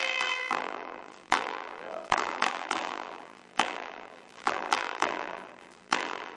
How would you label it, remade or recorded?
remade